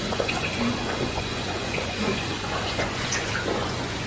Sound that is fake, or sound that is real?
fake